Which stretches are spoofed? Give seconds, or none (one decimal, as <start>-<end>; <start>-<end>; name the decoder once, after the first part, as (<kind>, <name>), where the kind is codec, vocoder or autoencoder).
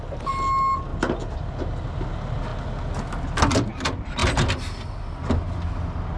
none